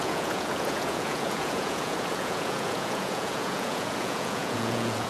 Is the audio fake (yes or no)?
yes